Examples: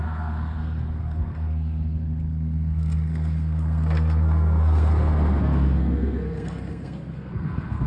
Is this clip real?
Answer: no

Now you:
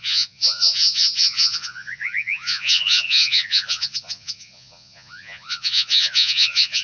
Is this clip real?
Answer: no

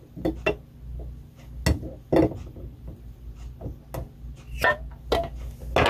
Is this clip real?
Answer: yes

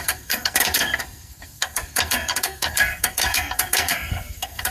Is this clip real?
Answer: no